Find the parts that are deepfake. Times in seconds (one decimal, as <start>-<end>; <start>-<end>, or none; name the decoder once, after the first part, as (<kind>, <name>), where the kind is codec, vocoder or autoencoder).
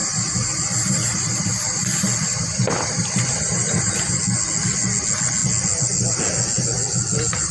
0.0-4.2 (vocoder, BigVGAN v2)